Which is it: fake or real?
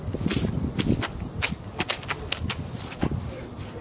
real